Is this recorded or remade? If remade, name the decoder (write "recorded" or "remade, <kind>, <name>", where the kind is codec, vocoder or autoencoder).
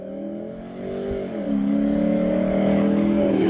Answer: remade, codec, DAC